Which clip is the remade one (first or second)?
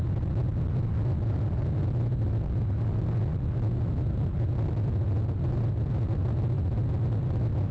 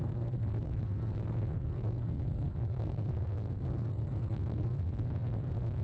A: second